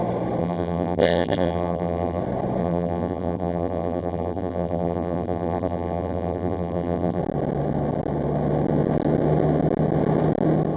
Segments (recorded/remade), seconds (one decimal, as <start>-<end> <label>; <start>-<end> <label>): 0.0-0.4 recorded; 0.4-2.2 remade; 2.2-2.6 recorded; 2.6-7.2 remade; 7.2-10.8 recorded